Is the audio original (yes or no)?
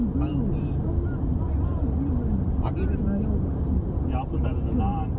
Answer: yes